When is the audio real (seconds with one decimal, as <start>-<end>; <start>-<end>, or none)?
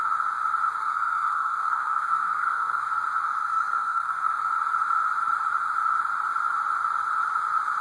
0.0-0.8; 2.9-3.4; 4.5-7.8